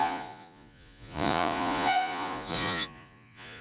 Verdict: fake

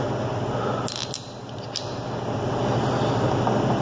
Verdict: real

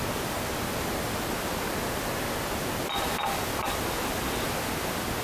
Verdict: real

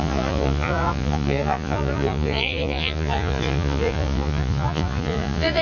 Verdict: fake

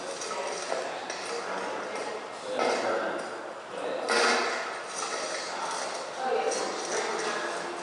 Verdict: real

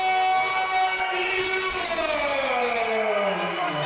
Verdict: real